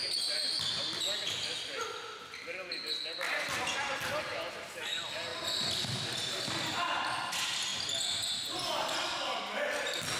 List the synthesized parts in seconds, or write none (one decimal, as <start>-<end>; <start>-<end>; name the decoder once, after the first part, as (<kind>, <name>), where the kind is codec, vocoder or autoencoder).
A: none